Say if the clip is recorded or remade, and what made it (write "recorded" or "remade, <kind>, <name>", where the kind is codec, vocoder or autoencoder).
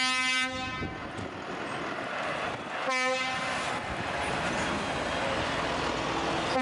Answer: recorded